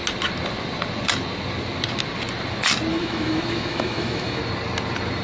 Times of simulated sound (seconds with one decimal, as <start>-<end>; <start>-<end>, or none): 2.9-4.4